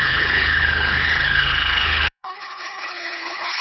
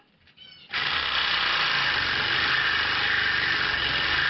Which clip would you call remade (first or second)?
first